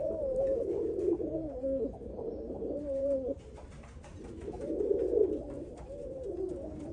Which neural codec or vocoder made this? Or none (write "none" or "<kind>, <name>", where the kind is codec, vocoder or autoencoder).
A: vocoder, BigVGAN v2